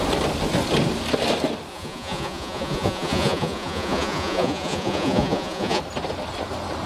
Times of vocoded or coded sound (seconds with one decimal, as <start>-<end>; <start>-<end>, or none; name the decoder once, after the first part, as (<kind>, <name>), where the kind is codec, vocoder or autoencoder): 1.7-5.8 (vocoder, Vocos)